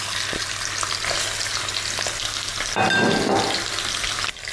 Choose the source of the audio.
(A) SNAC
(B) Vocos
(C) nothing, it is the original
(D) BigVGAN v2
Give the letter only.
C